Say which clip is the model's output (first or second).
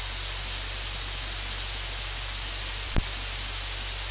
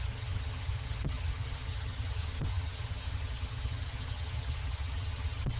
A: second